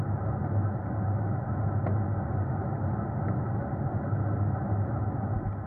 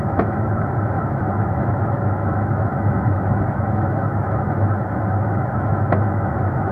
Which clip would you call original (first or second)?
first